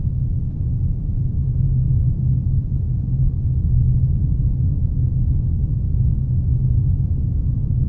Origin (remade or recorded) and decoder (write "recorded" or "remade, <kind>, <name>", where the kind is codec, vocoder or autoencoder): recorded